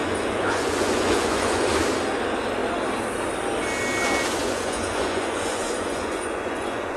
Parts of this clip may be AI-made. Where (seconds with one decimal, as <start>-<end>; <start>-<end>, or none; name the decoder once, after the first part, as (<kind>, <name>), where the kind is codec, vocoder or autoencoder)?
0.0-1.7 (vocoder, Vocos); 4.4-7.0